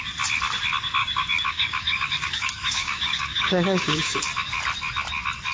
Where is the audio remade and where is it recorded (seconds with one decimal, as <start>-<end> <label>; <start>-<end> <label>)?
0.0-1.0 recorded; 1.0-4.2 remade; 4.2-5.5 recorded